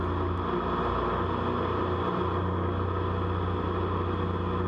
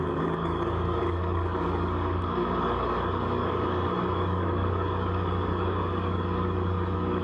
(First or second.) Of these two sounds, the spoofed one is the second